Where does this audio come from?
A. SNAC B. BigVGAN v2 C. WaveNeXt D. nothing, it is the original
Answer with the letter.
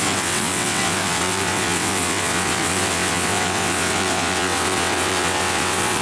C